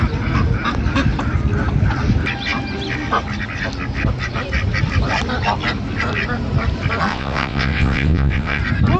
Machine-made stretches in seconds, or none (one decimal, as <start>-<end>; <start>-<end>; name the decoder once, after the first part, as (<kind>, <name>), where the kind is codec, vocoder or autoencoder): 7.1-8.6 (vocoder, WaveNeXt)